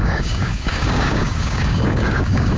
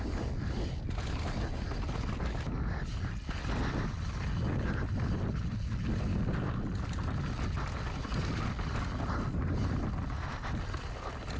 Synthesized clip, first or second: first